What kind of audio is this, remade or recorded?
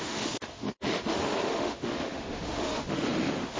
remade